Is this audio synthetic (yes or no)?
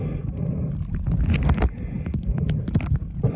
no